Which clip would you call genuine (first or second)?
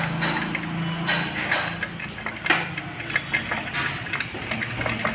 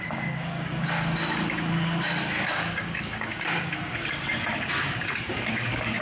first